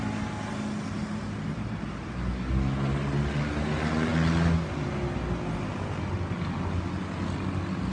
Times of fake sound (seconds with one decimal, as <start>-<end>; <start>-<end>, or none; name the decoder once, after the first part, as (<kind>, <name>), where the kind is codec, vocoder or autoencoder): none